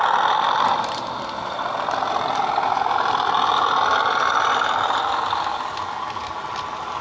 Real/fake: real